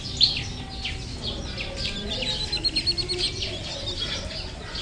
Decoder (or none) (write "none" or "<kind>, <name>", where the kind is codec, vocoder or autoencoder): none